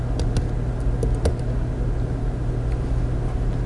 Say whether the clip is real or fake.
real